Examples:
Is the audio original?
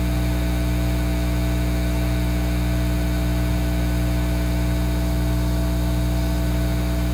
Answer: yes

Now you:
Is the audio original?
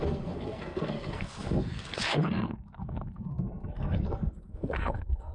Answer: no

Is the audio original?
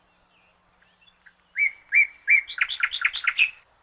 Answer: yes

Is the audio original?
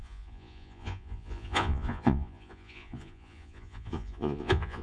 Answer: no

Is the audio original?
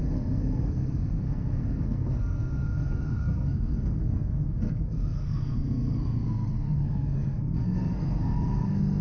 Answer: no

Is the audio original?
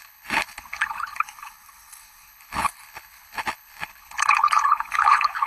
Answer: no